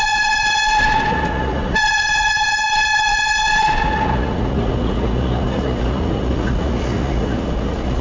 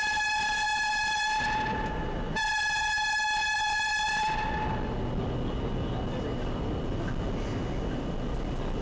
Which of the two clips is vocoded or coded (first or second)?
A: first